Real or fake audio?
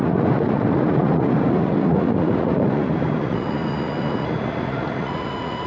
fake